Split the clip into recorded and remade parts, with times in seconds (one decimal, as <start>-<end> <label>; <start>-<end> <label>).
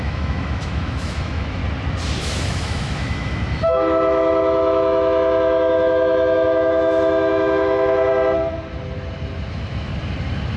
0.0-1.6 remade; 1.6-2.2 recorded; 2.2-8.1 remade; 8.1-9.5 recorded; 9.5-9.9 remade; 9.9-10.6 recorded